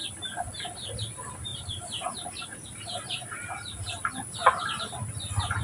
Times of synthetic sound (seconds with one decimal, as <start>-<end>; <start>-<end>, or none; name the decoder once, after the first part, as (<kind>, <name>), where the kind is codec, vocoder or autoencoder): 1.5-4.9 (vocoder, BigVGAN v2)